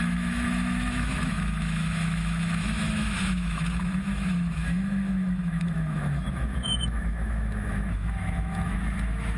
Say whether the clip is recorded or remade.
remade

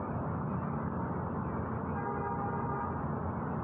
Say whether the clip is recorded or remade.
recorded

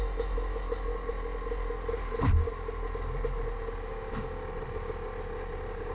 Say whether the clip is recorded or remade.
recorded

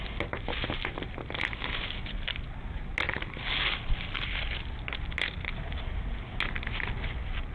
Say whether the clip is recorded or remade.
recorded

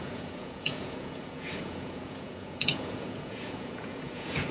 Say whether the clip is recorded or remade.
remade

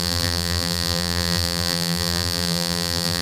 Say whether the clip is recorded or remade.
remade